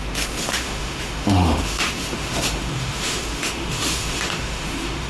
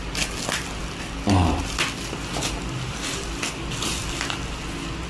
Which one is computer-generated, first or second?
first